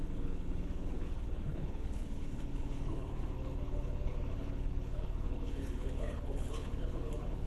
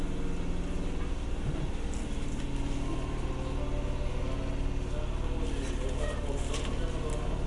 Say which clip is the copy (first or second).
first